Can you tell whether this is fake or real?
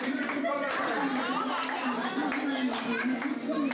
real